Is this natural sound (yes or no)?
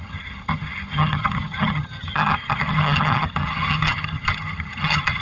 no